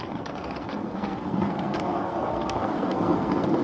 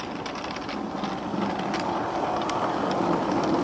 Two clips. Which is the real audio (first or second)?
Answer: second